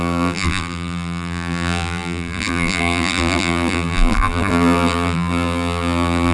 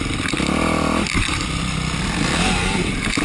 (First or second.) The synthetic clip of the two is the first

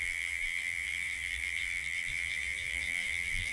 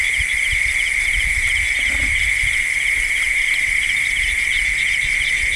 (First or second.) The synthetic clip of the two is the first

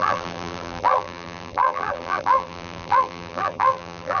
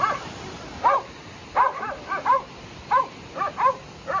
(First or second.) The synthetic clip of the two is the first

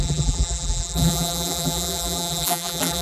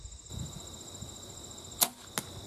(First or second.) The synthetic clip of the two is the first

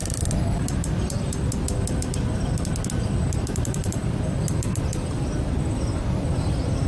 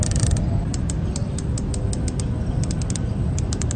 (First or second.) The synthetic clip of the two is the first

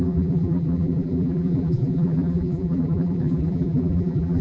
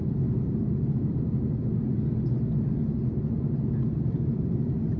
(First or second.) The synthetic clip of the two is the first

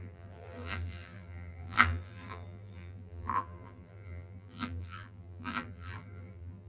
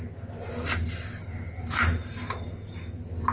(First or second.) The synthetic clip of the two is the first